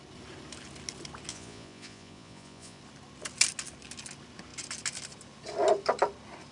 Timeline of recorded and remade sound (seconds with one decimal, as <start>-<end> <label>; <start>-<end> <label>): 0.0-1.3 recorded; 1.3-2.8 remade; 2.8-6.5 recorded